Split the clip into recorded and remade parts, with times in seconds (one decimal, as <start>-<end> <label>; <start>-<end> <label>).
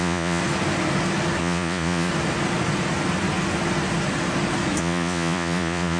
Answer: 0.0-0.4 remade; 0.4-1.4 recorded; 1.4-2.1 remade; 2.1-4.8 recorded; 4.8-6.0 remade